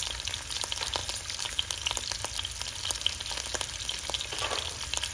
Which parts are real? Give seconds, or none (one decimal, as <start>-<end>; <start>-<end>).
0.0-5.1